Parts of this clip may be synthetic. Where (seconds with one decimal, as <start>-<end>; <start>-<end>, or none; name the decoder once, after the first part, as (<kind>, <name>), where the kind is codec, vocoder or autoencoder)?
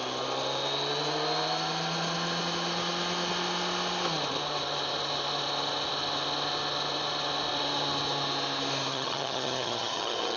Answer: 8.9-10.4 (vocoder, HiFi-GAN)